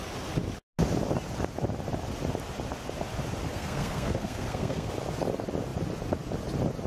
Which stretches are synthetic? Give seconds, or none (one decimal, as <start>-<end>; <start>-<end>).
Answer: 3.5-4.9